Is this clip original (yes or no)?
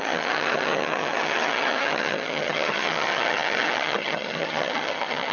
no